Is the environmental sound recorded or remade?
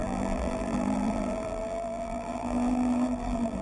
remade